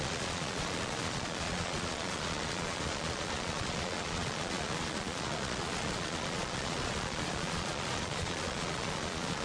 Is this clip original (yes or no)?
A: no